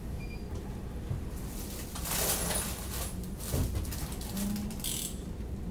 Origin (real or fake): real